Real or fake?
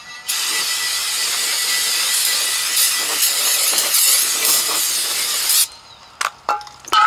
real